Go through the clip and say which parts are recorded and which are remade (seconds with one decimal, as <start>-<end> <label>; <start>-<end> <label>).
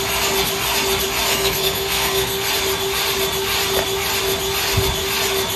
0.0-1.3 recorded; 1.3-2.5 remade; 2.5-5.6 recorded